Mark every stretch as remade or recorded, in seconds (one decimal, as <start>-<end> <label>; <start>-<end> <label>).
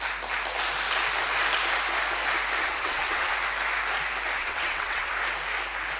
0.0-2.6 recorded; 2.6-3.3 remade; 3.3-4.4 recorded; 4.4-5.1 remade; 5.1-6.0 recorded